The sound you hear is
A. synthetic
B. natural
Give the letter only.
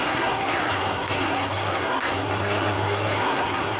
A